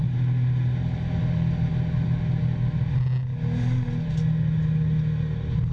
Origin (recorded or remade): recorded